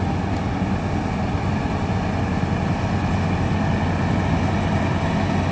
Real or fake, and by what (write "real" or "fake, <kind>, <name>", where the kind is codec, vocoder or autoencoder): real